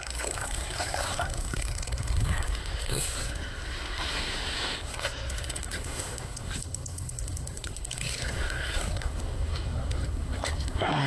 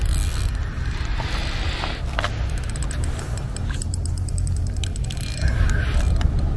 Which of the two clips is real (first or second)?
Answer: second